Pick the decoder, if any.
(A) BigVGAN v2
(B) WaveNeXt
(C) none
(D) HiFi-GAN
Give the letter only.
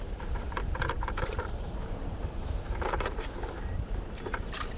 A